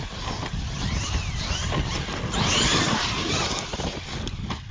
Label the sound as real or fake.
real